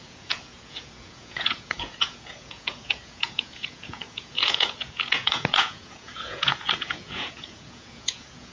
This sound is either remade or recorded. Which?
remade